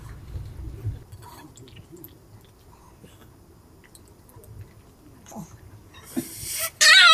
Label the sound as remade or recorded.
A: recorded